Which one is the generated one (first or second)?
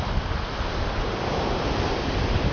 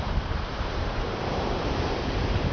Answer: second